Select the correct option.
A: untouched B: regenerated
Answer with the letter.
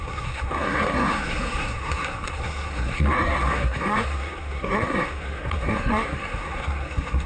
B